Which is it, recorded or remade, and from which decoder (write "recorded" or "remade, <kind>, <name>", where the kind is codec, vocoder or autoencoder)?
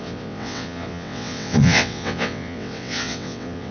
remade, vocoder, WaveNeXt